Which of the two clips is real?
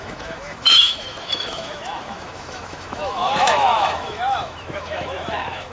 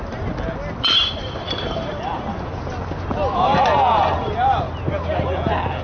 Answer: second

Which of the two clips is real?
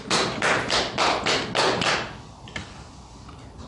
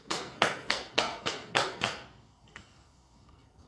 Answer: first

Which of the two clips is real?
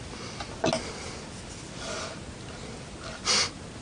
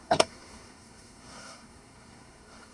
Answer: first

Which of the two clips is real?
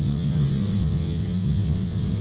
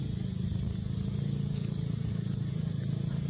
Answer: second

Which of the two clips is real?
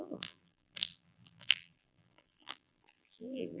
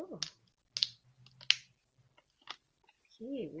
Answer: second